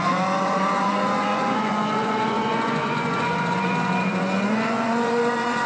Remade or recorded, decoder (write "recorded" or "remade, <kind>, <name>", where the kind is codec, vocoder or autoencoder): remade, vocoder, Vocos